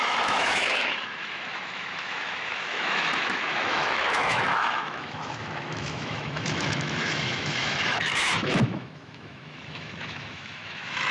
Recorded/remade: remade